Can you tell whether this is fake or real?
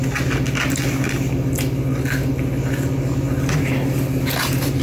real